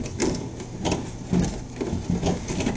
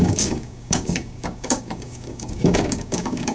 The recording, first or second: first